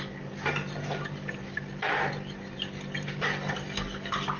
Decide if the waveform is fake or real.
real